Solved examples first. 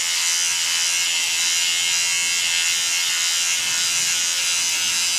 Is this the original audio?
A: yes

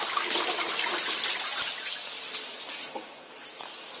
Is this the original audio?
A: yes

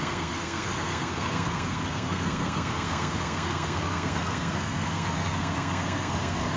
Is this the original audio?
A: no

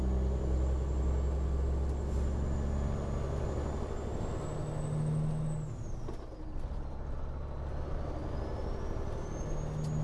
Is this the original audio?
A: yes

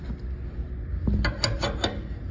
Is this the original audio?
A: yes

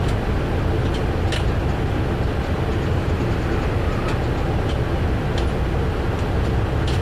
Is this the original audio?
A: yes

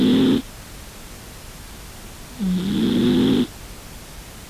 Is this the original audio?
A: yes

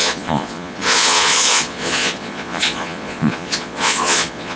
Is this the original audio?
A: no